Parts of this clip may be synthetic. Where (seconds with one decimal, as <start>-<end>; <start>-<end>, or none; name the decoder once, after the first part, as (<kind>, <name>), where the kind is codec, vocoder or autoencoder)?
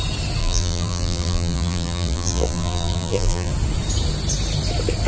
0.4-3.5 (vocoder, BigVGAN v2)